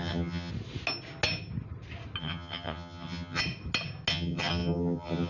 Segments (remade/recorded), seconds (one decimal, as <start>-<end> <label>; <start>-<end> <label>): 0.0-0.5 remade; 0.5-2.2 recorded; 2.2-3.4 remade; 3.4-4.1 recorded; 4.1-5.3 remade